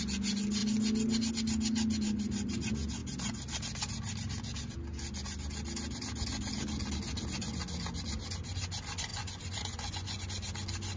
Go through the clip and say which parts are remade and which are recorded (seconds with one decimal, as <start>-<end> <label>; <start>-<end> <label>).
0.0-9.1 recorded; 9.1-10.2 remade; 10.2-11.0 recorded

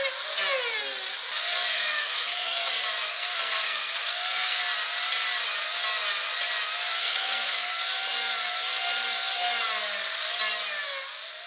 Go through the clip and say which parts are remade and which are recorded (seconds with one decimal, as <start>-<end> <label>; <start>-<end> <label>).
0.0-1.7 recorded; 1.7-2.7 remade; 2.7-3.1 recorded; 3.1-4.6 remade; 4.6-7.0 recorded; 7.0-7.7 remade; 7.7-11.5 recorded

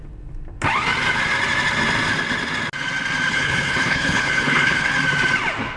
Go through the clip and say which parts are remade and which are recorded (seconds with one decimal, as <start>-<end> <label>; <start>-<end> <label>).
0.0-3.3 recorded; 3.3-4.9 remade; 4.9-5.8 recorded